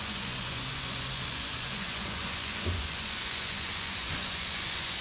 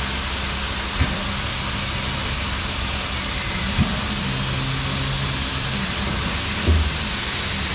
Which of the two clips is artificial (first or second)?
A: first